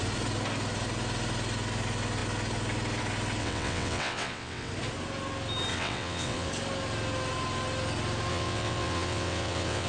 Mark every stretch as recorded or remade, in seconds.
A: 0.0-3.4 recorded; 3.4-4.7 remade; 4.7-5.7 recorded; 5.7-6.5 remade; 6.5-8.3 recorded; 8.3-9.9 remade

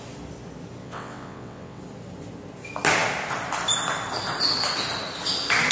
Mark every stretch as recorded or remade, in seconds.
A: 0.0-0.8 recorded; 0.8-1.8 remade; 1.8-5.7 recorded